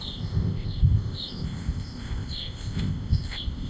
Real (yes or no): no